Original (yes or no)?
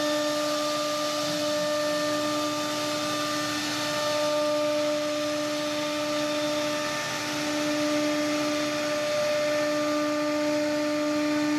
yes